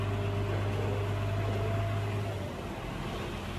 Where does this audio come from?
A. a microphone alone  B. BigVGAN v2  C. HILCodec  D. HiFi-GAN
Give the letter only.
A